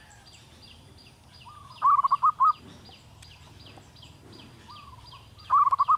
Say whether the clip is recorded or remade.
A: recorded